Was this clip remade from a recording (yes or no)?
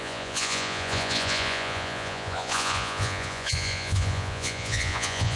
yes